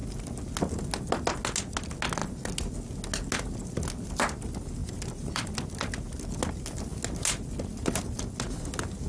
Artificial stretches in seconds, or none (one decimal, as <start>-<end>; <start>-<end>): 4.8-5.5